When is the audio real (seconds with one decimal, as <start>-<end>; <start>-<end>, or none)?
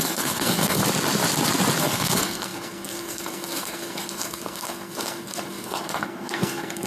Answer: 0.8-1.8